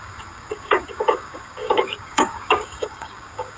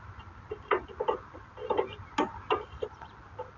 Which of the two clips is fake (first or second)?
first